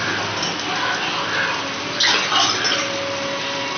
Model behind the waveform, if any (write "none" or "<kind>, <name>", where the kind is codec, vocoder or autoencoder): none